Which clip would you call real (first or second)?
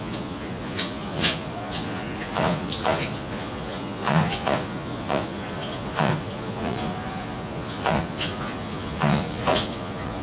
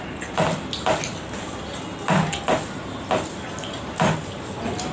second